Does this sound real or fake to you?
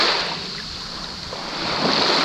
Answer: real